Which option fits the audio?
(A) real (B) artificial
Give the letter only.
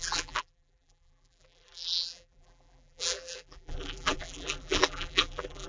B